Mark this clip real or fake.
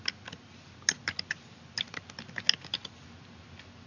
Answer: real